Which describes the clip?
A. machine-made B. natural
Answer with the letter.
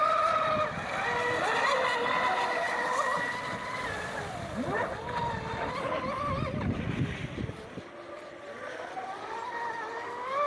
B